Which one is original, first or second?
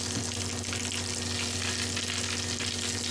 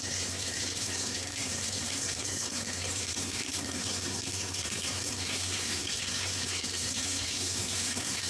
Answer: first